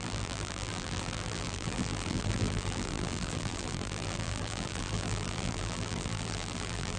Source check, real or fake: fake